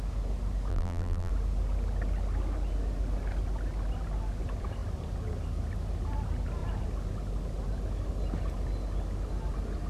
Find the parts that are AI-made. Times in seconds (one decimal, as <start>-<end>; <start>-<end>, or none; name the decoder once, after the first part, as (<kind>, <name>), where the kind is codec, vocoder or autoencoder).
0.7-1.3 (vocoder, BigVGAN v2)